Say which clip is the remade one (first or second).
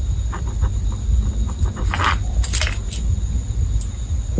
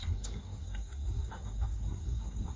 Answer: second